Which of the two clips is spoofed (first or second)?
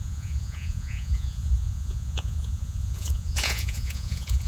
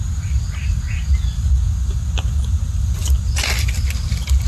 first